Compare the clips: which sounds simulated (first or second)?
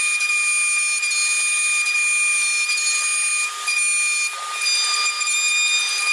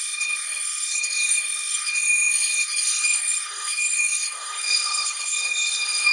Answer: second